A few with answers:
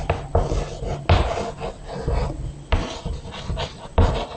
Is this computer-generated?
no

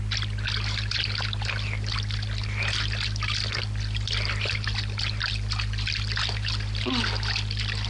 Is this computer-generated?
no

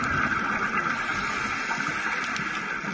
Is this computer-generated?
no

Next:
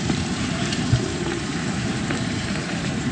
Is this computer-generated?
yes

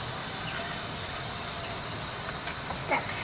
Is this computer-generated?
no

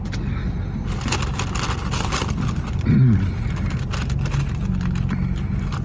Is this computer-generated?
no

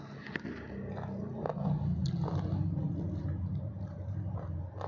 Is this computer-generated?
no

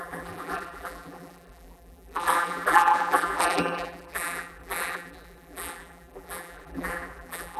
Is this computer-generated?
yes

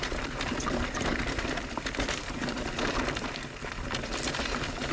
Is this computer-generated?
yes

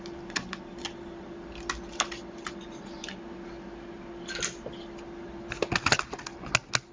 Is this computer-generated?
no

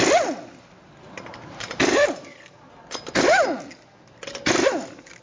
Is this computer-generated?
no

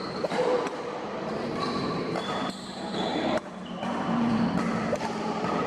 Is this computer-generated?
yes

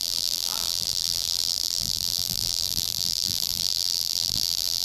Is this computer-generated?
yes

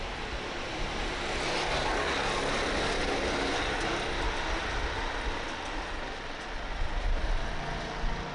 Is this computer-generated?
no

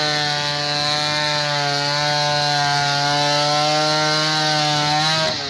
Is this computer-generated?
no